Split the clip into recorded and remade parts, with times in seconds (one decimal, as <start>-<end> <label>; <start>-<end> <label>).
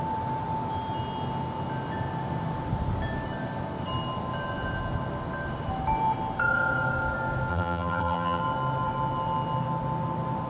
0.0-7.5 recorded; 7.5-8.4 remade; 8.4-10.5 recorded